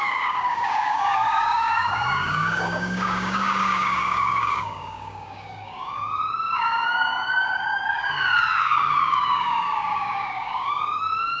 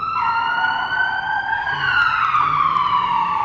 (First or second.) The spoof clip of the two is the first